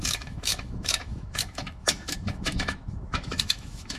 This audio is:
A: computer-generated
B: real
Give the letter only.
A